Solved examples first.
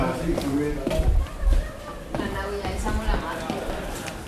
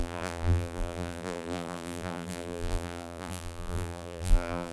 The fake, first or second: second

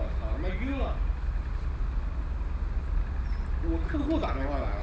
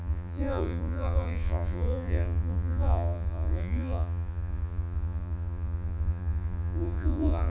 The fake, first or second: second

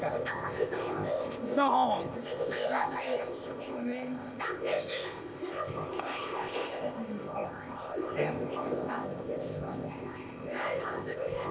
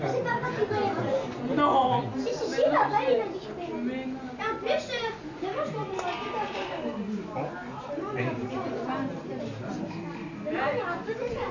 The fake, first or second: first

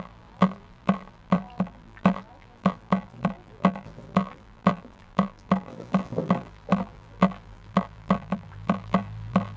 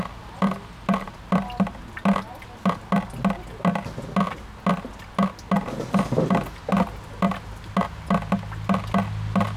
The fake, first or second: first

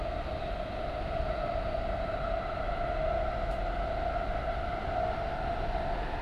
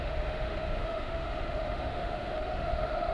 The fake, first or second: second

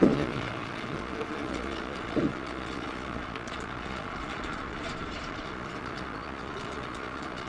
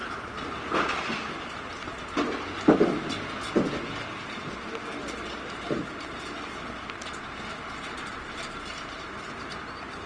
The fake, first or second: first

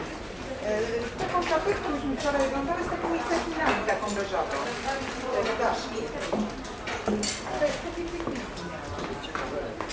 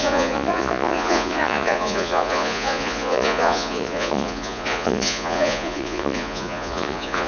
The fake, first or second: second